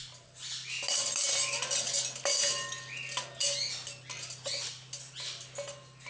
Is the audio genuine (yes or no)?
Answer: yes